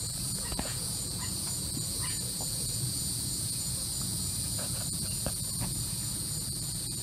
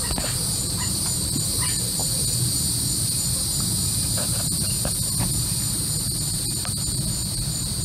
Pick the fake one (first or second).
first